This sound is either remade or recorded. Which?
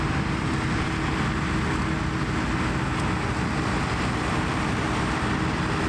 recorded